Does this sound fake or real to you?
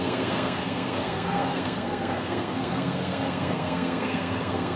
fake